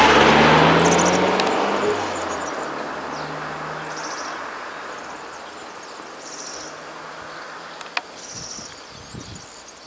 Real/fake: real